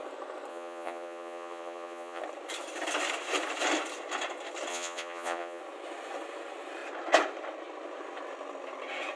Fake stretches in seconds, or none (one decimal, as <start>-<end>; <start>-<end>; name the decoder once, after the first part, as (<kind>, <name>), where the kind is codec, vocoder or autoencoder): 0.5-2.2 (vocoder, Vocos); 4.7-5.6

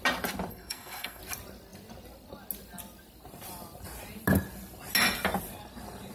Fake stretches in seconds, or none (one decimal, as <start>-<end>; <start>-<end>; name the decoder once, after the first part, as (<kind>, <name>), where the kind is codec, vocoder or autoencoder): 0.5-1.2 (codec, SNAC)

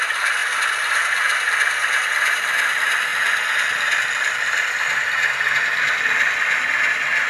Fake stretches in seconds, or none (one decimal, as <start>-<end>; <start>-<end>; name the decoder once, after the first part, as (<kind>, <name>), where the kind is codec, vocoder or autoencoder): none

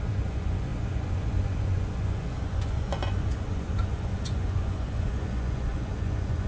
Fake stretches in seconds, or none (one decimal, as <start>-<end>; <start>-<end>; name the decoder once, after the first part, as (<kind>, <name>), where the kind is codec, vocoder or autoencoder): 0.0-6.5 (vocoder, Vocos)

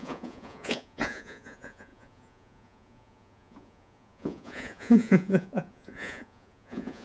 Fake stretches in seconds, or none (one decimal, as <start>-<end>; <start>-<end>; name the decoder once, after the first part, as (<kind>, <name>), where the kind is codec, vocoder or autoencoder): 0.0-7.0 (vocoder, Vocos)